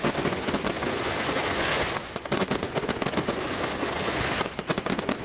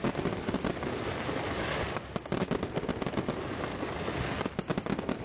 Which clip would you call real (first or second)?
second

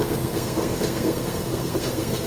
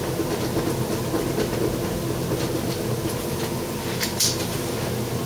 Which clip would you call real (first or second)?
second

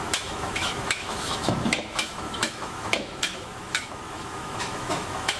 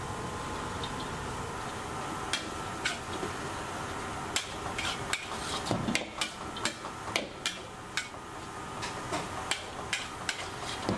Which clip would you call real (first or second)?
second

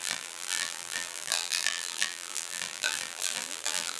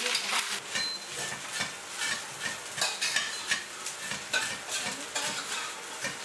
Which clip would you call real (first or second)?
second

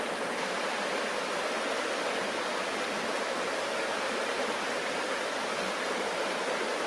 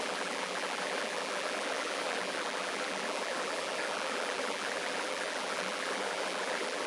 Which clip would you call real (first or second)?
first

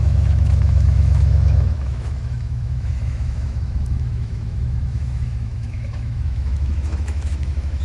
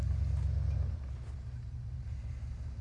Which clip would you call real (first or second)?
second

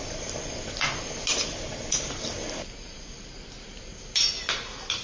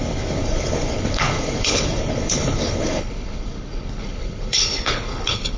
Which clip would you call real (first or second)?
first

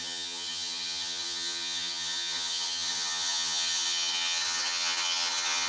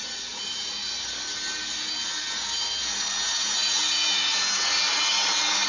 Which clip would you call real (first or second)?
second